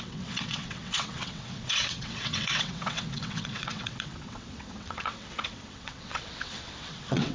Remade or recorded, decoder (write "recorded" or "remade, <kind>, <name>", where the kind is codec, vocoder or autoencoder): remade, vocoder, WaveNeXt